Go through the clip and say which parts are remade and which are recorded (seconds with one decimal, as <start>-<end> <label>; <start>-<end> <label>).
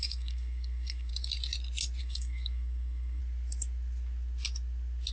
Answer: 0.0-1.1 remade; 1.1-2.0 recorded; 2.0-3.2 remade; 3.2-5.1 recorded